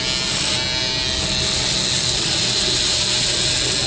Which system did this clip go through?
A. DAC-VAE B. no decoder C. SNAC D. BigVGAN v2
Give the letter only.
B